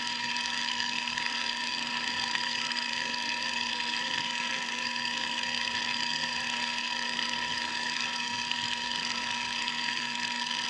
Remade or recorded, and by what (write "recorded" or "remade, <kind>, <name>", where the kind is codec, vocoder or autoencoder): remade, codec, SNAC